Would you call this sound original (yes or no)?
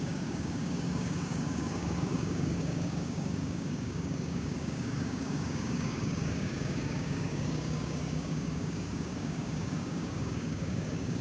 no